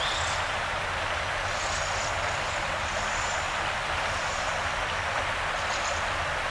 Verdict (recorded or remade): recorded